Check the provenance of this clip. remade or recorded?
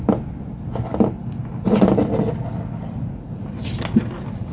recorded